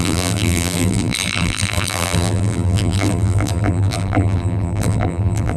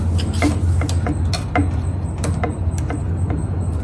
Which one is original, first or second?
second